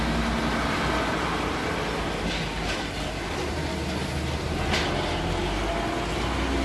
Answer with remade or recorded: recorded